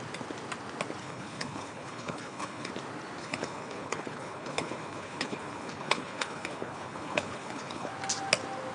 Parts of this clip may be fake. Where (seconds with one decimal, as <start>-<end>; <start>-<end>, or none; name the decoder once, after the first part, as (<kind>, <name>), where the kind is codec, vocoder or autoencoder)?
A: 1.0-2.7 (codec, HILCodec); 3.2-7.9